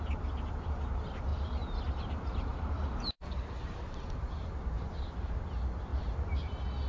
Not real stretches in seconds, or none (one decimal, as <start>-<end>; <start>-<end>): 1.3-5.4; 5.9-6.4